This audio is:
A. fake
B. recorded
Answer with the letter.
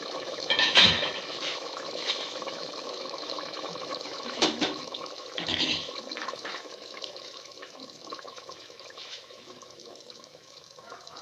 A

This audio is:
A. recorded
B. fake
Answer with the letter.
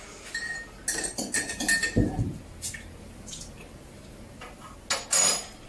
A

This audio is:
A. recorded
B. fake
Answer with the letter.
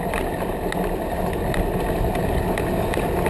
A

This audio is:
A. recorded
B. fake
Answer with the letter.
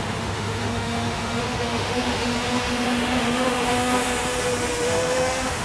B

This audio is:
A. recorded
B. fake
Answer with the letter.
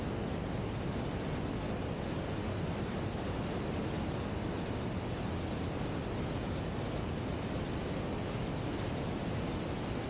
A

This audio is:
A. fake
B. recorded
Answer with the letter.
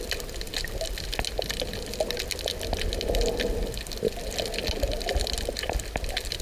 B